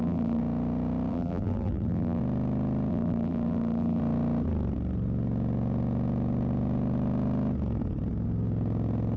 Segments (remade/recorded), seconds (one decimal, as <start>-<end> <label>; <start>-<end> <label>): 0.0-0.4 remade; 0.4-1.1 recorded; 1.1-2.2 remade; 2.2-2.9 recorded; 2.9-4.0 remade; 4.0-9.2 recorded